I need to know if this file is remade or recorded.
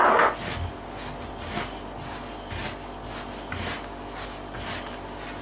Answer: recorded